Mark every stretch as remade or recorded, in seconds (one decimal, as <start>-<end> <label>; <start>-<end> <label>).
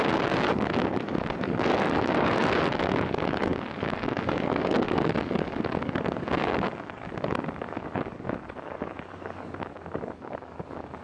0.0-11.0 remade